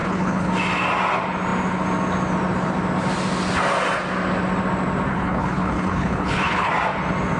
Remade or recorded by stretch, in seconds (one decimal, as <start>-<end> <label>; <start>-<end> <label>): 0.0-0.5 remade; 0.5-5.1 recorded; 5.1-6.7 remade; 6.7-7.4 recorded